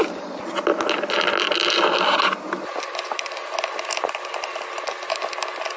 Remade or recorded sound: recorded